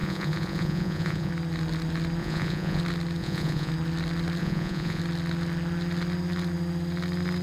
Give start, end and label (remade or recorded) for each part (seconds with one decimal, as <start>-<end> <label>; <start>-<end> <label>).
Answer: 0.0-1.3 remade; 1.3-2.2 recorded; 2.2-2.8 remade; 2.8-3.2 recorded; 3.2-3.7 remade; 3.7-4.4 recorded; 4.4-5.0 remade; 5.0-7.4 recorded

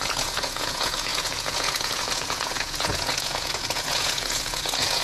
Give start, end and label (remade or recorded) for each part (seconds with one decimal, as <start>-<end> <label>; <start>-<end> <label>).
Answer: 0.0-5.0 remade

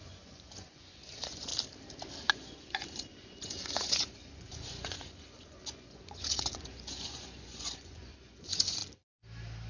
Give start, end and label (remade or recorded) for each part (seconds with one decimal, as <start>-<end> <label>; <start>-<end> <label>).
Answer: 0.0-1.5 remade; 1.5-2.3 recorded; 2.3-8.8 remade; 8.8-9.7 recorded

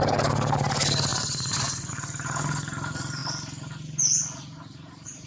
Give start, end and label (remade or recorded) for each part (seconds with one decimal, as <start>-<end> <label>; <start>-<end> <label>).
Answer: 0.0-1.1 recorded; 1.1-1.9 remade; 1.9-5.3 recorded

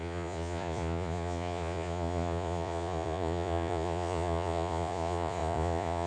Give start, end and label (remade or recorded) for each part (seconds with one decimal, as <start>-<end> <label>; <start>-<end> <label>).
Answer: 0.0-6.1 remade

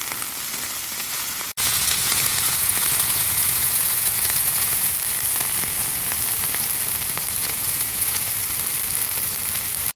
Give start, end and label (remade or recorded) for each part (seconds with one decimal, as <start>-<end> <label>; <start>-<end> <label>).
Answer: 0.0-1.0 recorded; 1.0-4.9 remade; 4.9-7.4 recorded; 7.4-8.3 remade; 8.3-10.0 recorded

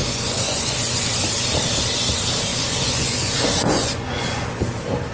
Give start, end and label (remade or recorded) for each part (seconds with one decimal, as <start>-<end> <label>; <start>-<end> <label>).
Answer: 0.0-1.1 remade; 1.1-2.5 recorded; 2.5-4.6 remade; 4.6-5.1 recorded

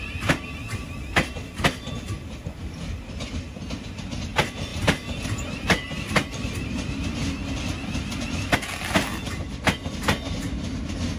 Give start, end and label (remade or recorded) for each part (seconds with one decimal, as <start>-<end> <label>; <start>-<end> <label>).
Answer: 0.0-11.2 recorded